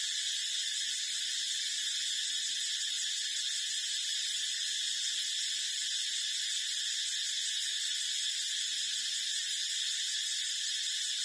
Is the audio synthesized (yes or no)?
no